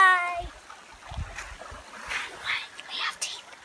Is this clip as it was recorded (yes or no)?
yes